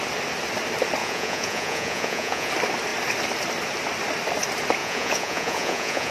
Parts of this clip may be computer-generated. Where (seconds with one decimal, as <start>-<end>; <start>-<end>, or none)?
1.0-2.5; 4.8-6.1